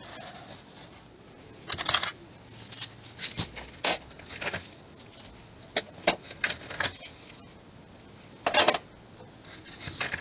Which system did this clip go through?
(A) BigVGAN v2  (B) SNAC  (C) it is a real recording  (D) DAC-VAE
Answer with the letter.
C